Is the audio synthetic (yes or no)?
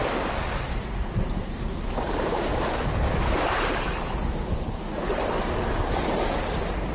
no